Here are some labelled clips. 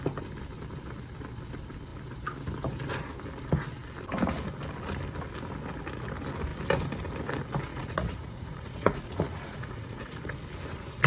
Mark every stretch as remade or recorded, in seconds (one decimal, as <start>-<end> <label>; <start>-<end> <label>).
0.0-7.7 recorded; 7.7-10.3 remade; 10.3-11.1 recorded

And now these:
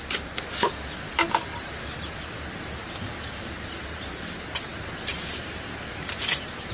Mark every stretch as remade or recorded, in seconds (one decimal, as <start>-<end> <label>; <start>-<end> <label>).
0.0-6.7 recorded

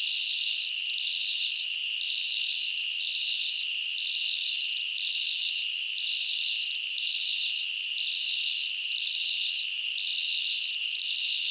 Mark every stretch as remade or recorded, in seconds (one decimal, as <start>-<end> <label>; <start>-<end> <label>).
0.0-11.5 recorded

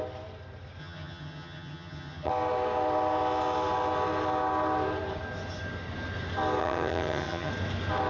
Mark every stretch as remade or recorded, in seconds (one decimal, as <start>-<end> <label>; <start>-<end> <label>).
0.0-0.8 recorded; 0.8-2.3 remade; 2.3-6.6 recorded; 6.6-7.5 remade; 7.5-8.1 recorded